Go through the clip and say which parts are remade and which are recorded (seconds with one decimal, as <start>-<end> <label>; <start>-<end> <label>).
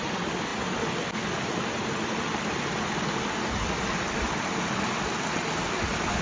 0.0-6.2 recorded